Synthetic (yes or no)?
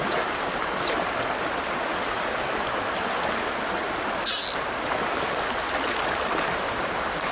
no